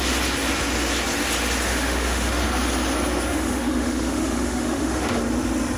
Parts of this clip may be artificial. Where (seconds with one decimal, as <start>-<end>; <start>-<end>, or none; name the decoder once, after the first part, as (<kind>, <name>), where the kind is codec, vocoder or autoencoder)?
1.7-2.4 (autoencoder, DAC-VAE); 3.3-5.2